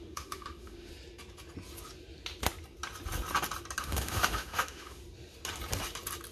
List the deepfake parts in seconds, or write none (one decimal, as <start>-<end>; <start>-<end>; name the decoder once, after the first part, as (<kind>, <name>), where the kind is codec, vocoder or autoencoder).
0.0-0.9 (autoencoder, DAC-VAE); 3.8-5.0